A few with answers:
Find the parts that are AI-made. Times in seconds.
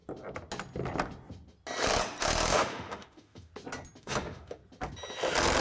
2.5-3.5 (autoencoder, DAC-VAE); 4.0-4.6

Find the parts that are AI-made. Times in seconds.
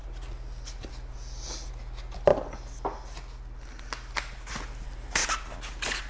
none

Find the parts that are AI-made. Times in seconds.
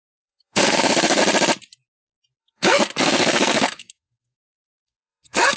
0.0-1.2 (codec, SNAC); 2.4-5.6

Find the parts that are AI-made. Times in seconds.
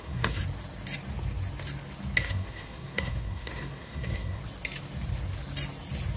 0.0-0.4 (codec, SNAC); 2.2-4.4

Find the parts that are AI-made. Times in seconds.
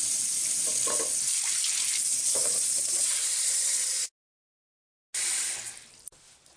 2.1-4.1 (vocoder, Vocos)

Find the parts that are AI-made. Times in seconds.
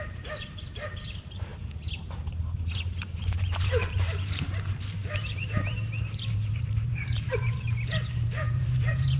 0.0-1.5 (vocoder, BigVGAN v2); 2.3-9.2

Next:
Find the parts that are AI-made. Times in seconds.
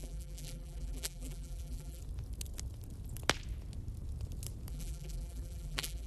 0.0-2.0 (vocoder, BigVGAN v2); 4.7-6.1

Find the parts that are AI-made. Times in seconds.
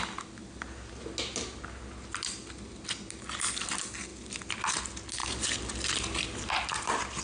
none